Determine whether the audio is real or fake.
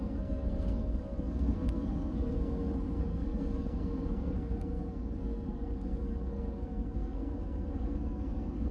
fake